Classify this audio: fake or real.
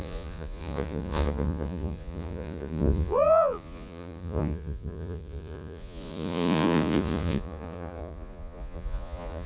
fake